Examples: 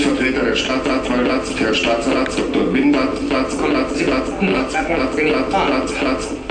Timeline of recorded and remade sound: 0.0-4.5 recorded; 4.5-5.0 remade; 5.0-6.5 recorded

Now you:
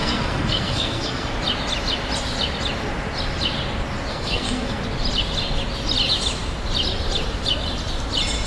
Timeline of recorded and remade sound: 0.0-1.3 remade; 1.3-4.1 recorded; 4.1-4.8 remade; 4.8-8.5 recorded

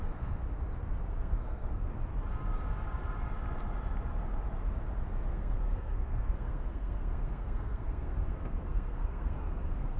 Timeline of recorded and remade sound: 0.0-0.4 remade; 0.4-1.1 recorded; 1.1-1.9 remade; 1.9-5.3 recorded; 5.3-10.0 remade

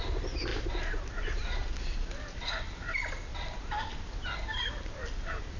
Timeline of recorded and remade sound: 0.0-5.6 recorded

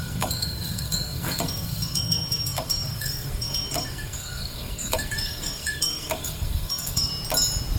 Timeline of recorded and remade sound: 0.0-7.1 remade; 7.1-7.8 recorded